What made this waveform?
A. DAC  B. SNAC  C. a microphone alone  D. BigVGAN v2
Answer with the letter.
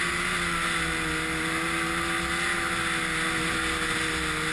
C